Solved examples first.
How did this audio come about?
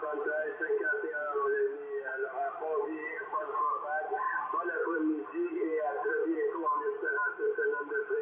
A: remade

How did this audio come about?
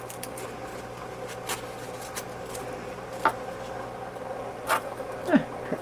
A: recorded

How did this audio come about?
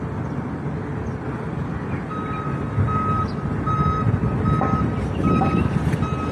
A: recorded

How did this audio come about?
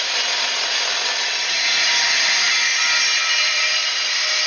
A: remade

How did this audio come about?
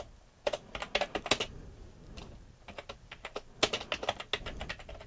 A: recorded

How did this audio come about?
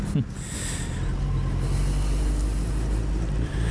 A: recorded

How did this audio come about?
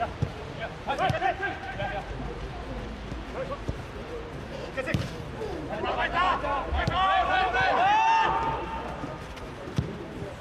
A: remade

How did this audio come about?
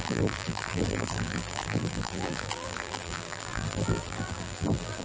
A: remade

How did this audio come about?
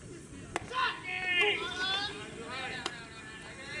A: recorded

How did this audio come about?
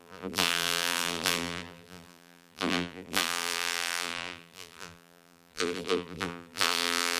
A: remade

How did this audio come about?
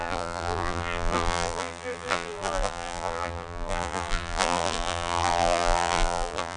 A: remade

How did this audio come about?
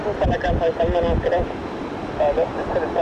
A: recorded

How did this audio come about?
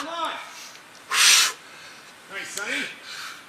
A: recorded